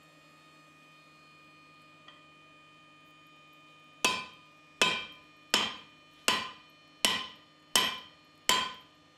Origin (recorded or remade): recorded